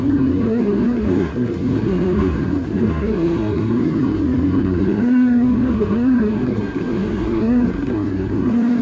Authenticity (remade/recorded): remade